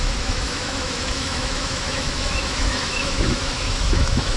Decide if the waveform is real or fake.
fake